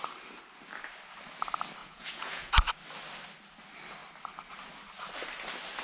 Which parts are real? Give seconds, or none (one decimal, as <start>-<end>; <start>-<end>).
0.0-1.8; 2.5-5.8